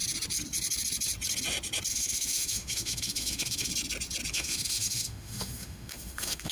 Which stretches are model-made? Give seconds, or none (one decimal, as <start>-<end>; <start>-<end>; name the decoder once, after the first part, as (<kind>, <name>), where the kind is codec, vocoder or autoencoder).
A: 1.9-3.7 (autoencoder, DAC-VAE); 4.3-6.5